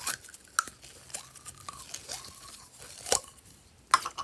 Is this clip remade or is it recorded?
recorded